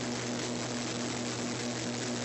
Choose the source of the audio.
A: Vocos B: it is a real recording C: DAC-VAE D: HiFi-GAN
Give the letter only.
B